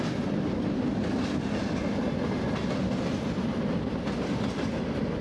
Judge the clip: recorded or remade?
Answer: recorded